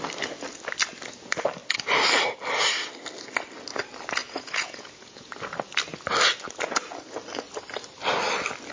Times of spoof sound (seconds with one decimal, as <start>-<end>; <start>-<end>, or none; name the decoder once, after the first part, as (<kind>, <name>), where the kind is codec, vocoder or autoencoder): 4.2-5.3 (vocoder, Vocos)

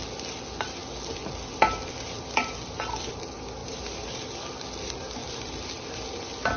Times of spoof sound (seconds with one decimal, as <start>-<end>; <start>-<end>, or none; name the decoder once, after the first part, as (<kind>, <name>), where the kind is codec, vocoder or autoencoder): 3.6-4.4 (vocoder, BigVGAN v2); 5.2-5.8

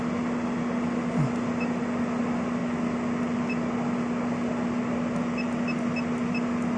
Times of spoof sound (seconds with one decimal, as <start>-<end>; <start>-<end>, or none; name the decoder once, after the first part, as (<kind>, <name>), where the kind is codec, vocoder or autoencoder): none

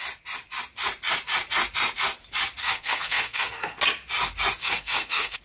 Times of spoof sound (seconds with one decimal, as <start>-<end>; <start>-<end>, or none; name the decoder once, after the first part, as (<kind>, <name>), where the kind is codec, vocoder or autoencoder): 2.6-3.8 (codec, SNAC); 4.6-5.4

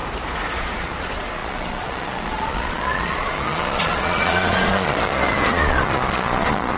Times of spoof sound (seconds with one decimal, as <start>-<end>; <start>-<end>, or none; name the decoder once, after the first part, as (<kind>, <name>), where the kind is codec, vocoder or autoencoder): 0.6-6.8 (vocoder, Vocos)

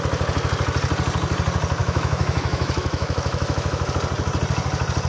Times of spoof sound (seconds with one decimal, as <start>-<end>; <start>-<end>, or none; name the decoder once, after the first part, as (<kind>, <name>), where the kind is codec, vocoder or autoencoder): 1.8-3.9 (autoencoder, DAC-VAE)